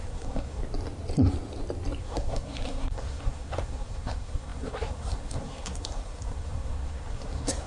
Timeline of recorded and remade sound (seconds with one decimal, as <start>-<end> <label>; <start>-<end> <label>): 0.0-0.6 remade; 0.6-2.0 recorded; 2.0-7.7 remade